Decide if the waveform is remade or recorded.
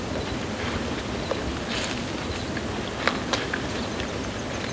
recorded